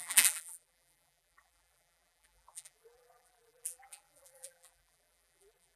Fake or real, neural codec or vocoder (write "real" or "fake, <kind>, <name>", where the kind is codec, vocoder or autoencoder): fake, vocoder, BigVGAN v2